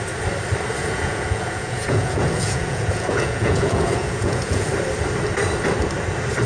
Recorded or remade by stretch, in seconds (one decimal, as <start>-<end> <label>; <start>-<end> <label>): 0.0-0.8 recorded; 0.8-4.7 remade; 4.7-6.5 recorded